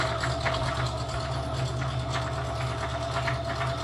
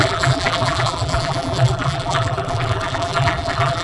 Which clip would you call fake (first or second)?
second